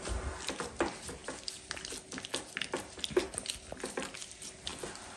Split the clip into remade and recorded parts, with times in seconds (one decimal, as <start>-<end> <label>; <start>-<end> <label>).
0.0-5.2 recorded